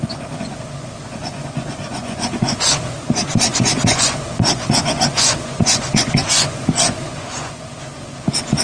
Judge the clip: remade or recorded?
remade